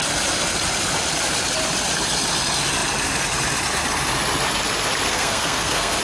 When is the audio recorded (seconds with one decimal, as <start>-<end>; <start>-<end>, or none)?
0.0-5.1